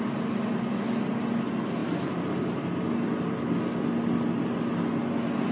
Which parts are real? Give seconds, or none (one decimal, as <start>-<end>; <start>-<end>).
0.0-5.5